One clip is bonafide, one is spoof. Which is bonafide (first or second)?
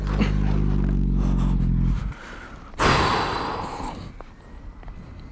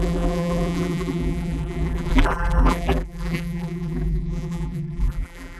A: first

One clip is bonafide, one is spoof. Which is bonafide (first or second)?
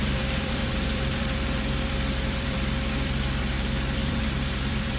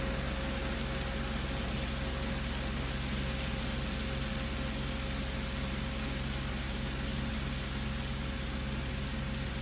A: second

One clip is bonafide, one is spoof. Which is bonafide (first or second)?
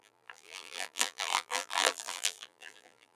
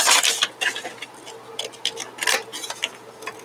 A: second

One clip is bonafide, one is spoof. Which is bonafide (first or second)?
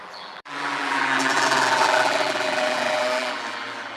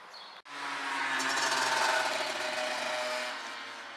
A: second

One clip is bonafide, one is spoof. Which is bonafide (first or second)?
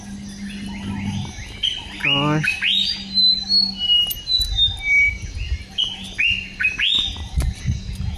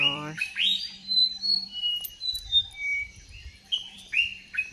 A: first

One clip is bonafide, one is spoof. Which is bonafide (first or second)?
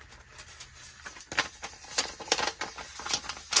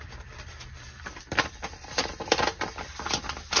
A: first